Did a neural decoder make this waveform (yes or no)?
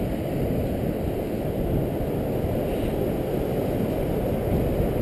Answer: no